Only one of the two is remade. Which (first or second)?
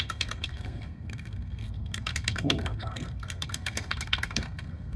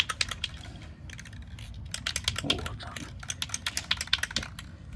first